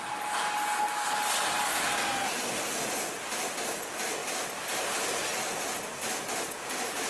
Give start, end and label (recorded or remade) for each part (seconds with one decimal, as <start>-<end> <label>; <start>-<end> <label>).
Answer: 0.0-7.1 recorded

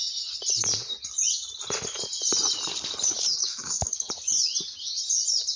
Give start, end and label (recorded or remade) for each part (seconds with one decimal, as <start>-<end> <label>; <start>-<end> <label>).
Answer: 0.0-3.4 recorded; 3.4-4.1 remade; 4.1-5.6 recorded

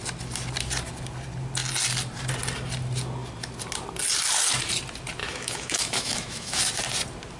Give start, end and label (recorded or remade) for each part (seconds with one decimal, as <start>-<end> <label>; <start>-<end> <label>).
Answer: 0.0-5.2 recorded; 5.2-6.6 remade; 6.6-7.4 recorded

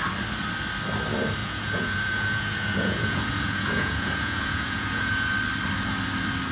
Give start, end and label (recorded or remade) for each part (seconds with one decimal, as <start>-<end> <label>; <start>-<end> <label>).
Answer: 0.0-1.4 recorded; 1.4-5.3 remade; 5.3-6.5 recorded